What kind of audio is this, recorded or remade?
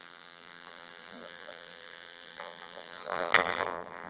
remade